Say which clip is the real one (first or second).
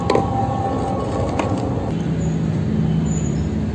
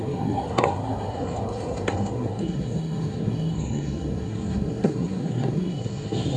first